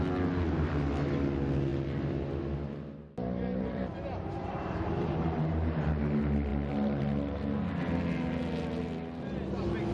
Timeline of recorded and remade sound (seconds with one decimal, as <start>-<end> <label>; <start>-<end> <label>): 0.0-3.5 recorded; 3.5-5.9 remade; 5.9-9.9 recorded